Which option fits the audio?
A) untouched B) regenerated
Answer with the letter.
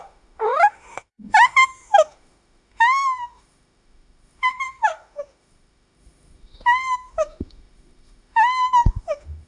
B